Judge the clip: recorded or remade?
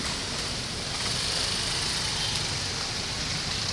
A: recorded